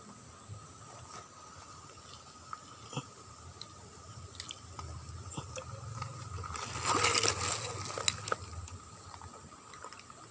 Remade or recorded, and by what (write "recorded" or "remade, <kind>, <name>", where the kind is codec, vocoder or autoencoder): recorded